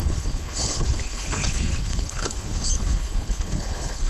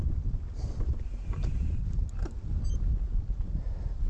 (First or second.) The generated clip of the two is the first